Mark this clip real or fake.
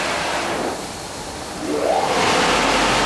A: real